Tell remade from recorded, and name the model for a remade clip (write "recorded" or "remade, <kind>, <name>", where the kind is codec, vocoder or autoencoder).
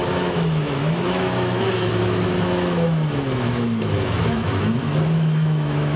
remade, autoencoder, DAC-VAE